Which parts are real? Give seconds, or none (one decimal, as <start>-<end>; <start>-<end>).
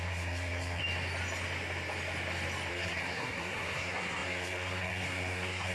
0.8-2.7